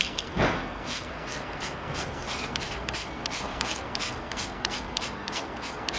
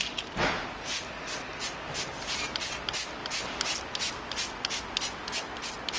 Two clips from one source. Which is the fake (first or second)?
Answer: first